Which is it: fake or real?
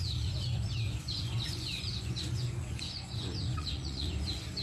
fake